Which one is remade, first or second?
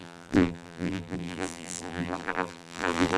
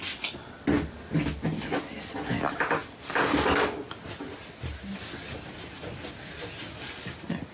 first